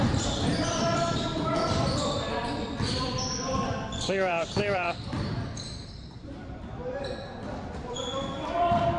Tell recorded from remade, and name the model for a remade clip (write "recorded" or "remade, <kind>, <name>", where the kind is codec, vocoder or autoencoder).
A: remade, vocoder, BigVGAN v2